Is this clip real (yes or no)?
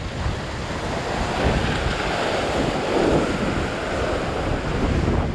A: yes